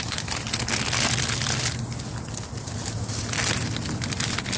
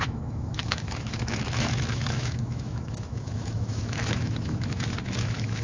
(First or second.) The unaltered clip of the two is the first